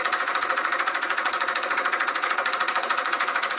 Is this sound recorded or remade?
remade